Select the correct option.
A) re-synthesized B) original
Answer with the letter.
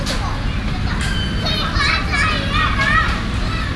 B